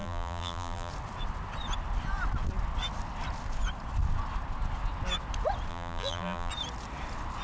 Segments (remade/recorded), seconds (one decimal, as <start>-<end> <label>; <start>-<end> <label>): 0.0-0.9 remade; 0.9-5.7 recorded; 5.7-6.5 remade; 6.5-7.4 recorded